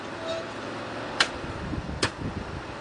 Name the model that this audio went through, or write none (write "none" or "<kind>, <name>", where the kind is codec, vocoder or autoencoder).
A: vocoder, BigVGAN v2